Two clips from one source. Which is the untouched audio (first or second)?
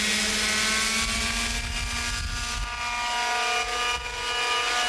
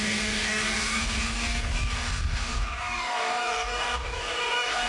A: first